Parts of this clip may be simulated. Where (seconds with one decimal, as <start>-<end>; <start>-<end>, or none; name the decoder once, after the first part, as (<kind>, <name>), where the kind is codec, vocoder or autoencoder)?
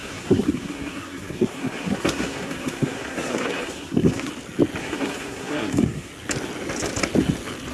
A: 0.0-4.3 (codec, SNAC); 4.8-6.1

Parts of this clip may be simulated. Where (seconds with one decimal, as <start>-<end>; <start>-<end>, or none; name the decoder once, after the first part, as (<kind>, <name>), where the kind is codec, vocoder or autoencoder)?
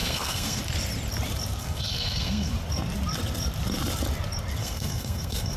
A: 0.0-0.6 (codec, SNAC); 1.6-2.5; 4.6-5.6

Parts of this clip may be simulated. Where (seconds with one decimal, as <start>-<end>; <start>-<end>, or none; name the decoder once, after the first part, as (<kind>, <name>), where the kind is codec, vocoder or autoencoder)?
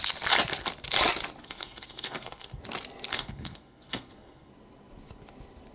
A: 1.4-2.6 (codec, SNAC); 3.1-4.5